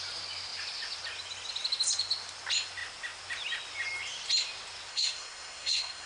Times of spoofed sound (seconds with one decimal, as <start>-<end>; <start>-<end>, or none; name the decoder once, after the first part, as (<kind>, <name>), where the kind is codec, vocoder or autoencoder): 4.9-6.1 (codec, SNAC)